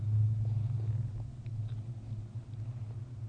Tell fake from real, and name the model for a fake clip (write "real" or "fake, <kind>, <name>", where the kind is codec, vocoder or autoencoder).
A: real